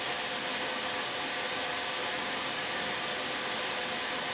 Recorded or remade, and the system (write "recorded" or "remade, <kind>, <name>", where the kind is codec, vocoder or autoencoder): recorded